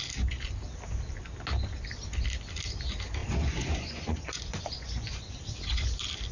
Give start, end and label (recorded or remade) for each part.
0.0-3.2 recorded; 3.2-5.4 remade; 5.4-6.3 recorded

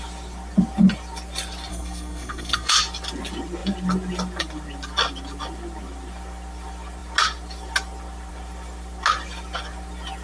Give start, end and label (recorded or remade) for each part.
0.0-1.7 recorded; 1.7-2.7 remade; 2.7-10.2 recorded

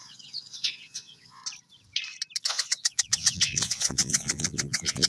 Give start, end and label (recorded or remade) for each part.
0.0-1.4 remade; 1.4-2.4 recorded; 2.4-5.1 remade

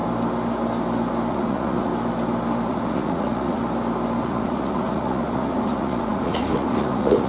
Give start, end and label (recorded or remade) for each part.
0.0-1.3 recorded; 1.3-1.9 remade; 1.9-2.7 recorded; 2.7-3.6 remade; 3.6-4.2 recorded; 4.2-7.3 remade

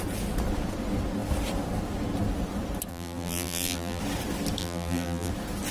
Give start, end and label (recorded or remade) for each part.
0.0-2.9 recorded; 2.9-4.0 remade; 4.0-4.6 recorded; 4.6-5.3 remade; 5.3-5.7 recorded